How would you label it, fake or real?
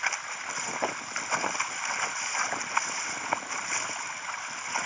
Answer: real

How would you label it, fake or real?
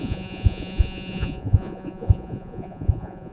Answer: fake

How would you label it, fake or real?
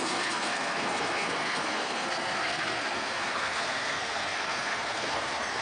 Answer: fake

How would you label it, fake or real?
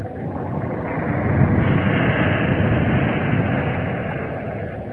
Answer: real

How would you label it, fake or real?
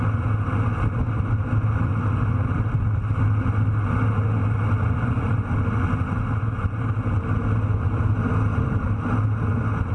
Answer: real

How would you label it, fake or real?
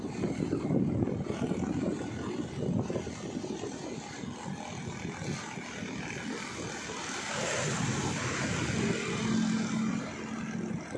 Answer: real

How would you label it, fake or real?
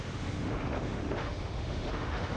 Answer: fake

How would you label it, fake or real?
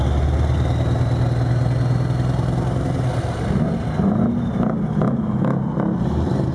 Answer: real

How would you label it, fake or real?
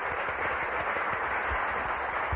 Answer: real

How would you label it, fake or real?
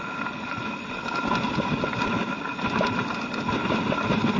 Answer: real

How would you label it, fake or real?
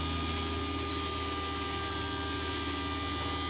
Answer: real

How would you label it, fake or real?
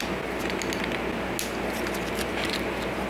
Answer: real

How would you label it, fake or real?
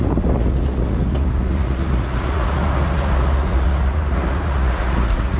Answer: fake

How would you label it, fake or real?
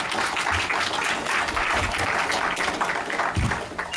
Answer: real